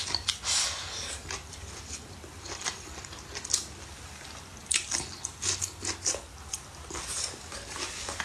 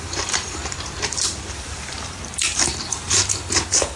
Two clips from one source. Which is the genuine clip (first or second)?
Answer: first